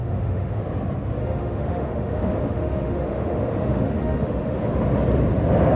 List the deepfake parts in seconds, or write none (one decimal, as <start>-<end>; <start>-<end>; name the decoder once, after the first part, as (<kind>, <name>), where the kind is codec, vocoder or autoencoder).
0.0-0.6 (autoencoder, DAC-VAE); 1.2-4.7